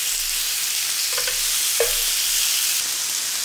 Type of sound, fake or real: real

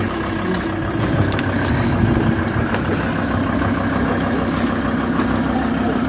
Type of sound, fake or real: real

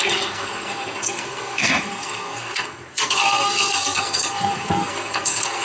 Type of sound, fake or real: fake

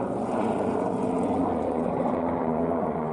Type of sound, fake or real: fake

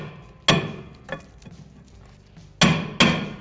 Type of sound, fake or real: real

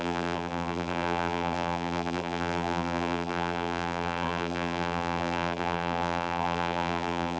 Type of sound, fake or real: fake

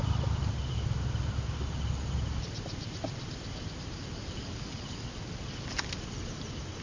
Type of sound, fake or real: real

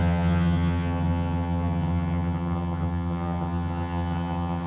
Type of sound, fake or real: fake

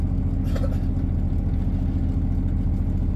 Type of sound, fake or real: real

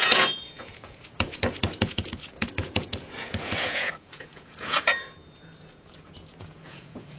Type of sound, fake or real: fake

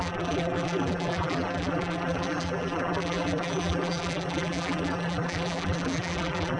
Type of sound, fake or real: fake